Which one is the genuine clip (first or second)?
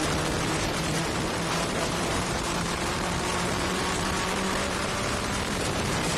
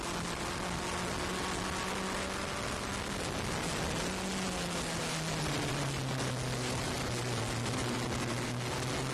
second